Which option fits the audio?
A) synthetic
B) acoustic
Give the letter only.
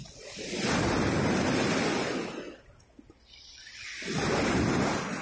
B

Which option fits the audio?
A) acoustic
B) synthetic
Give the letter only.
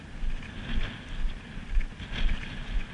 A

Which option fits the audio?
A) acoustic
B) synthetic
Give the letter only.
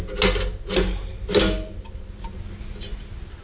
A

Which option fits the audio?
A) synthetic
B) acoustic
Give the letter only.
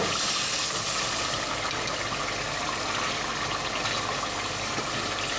B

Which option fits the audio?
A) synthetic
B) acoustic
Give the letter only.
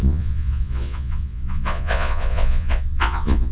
A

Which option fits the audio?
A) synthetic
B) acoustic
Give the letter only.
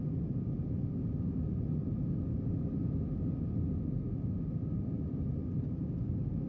B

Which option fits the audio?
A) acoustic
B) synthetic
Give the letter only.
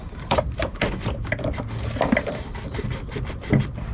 B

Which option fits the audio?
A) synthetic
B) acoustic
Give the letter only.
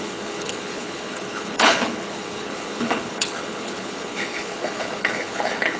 A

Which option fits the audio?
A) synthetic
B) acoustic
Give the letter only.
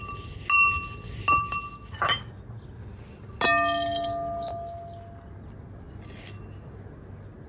B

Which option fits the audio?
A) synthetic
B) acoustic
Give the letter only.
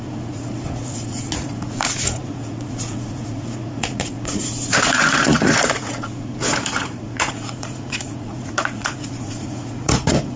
A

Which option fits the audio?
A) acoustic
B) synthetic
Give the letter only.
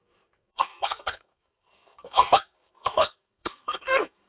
B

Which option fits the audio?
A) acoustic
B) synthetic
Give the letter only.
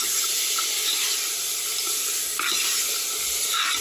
A